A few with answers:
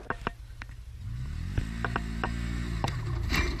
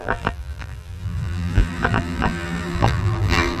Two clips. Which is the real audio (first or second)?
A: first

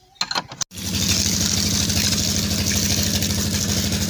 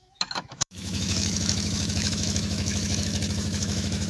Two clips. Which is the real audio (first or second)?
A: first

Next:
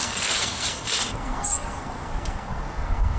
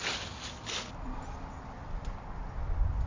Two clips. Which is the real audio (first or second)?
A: second